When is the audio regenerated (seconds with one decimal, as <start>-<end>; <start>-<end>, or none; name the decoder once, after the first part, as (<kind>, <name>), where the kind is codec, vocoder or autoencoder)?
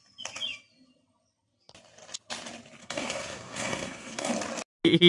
2.8-4.3 (codec, SNAC)